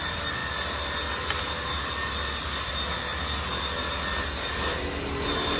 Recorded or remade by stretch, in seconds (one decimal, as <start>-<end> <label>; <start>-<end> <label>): 0.0-5.6 recorded